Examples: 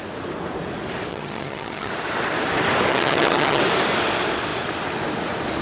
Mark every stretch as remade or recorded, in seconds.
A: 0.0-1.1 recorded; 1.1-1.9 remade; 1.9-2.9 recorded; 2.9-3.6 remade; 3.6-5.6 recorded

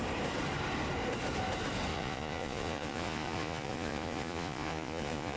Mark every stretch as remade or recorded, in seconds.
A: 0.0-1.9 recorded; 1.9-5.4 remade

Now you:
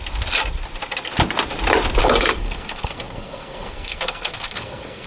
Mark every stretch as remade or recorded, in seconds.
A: 0.0-2.0 recorded; 2.0-5.1 remade